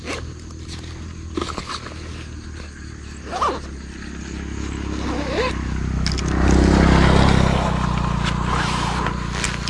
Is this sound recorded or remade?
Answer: recorded